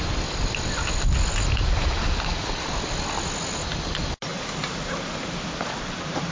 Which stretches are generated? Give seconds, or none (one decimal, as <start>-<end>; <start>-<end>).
4.3-5.8